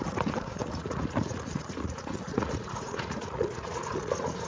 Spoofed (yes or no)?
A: yes